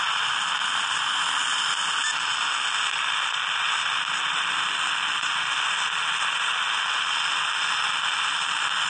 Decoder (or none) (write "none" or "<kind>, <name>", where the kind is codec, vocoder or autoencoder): none